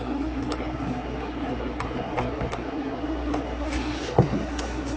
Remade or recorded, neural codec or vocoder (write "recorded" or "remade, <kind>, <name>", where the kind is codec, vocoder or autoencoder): remade, codec, SNAC